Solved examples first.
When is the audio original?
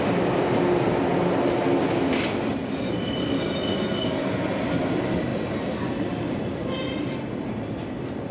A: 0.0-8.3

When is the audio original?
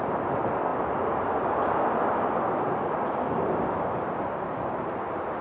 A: 0.0-5.4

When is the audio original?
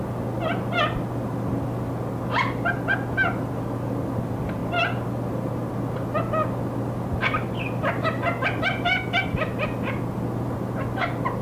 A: 0.0-11.4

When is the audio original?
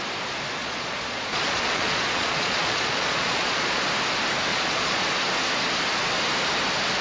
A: 0.0-0.6; 3.8-4.5; 5.0-7.0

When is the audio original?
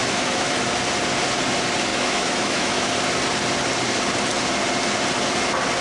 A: 0.6-1.9; 2.9-5.8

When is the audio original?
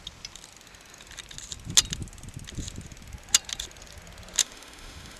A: 0.0-4.4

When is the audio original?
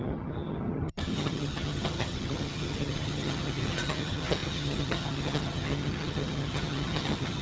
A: none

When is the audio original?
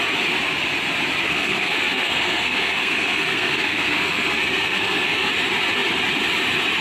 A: 0.0-1.2; 5.3-6.8